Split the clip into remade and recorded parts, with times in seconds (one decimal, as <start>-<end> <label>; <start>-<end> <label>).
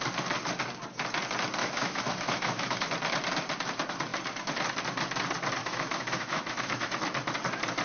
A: 0.0-1.6 recorded; 1.6-2.9 remade; 2.9-5.6 recorded; 5.6-7.0 remade; 7.0-7.8 recorded